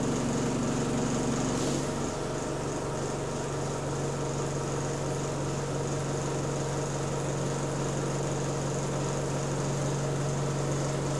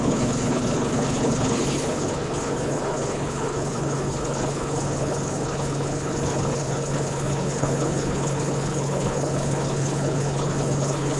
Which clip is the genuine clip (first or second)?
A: first